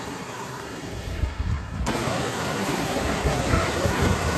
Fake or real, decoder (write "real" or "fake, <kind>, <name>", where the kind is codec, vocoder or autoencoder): fake, codec, SNAC